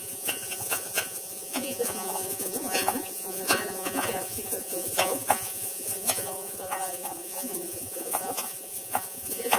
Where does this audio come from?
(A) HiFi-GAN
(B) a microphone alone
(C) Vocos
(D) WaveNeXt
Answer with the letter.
C